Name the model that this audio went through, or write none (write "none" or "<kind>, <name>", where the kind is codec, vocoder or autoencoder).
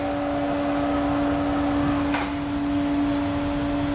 none